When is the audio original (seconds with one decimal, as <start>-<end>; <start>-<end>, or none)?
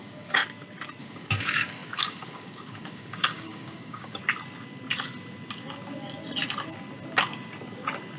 0.4-1.0; 4.2-8.2